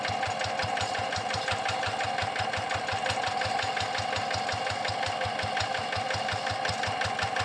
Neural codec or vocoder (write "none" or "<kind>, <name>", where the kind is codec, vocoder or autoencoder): none